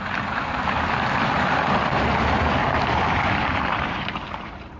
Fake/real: fake